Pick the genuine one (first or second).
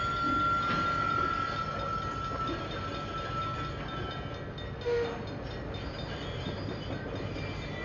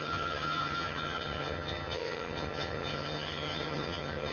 first